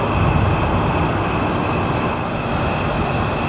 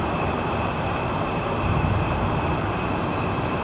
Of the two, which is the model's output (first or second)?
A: second